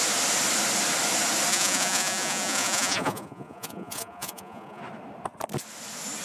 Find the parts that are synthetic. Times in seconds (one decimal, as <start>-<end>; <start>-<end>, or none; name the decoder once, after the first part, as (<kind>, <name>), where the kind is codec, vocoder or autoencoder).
1.5-4.8 (vocoder, Vocos)